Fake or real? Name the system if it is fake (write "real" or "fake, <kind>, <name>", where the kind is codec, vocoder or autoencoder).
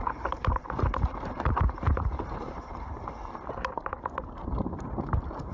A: fake, vocoder, BigVGAN v2